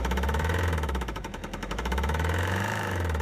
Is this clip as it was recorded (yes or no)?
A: no